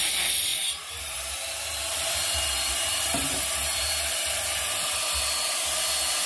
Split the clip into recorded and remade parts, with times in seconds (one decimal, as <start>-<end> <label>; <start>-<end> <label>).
0.0-0.5 recorded; 0.5-4.3 remade; 4.3-6.3 recorded

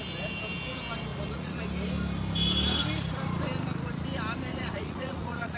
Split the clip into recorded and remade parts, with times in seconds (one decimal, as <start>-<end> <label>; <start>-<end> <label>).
0.0-1.1 recorded; 1.1-1.6 remade; 1.6-4.5 recorded; 4.5-5.6 remade

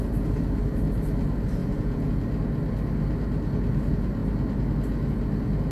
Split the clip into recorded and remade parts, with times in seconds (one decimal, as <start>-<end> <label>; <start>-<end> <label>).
0.0-1.6 recorded; 1.6-2.1 remade; 2.1-5.7 recorded

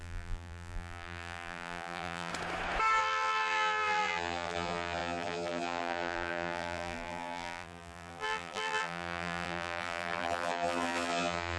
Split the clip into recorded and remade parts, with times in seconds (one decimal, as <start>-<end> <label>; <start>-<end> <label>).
0.0-2.3 remade; 2.3-3.0 recorded; 3.0-11.6 remade

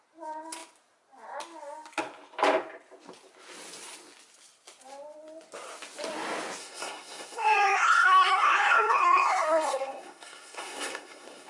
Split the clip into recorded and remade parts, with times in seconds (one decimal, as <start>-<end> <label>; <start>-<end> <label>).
0.0-6.6 recorded; 6.6-11.5 remade

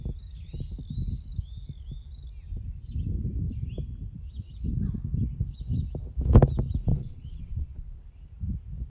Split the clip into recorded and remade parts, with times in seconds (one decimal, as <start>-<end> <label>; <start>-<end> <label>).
0.0-6.9 recorded; 6.9-8.0 remade; 8.0-8.9 recorded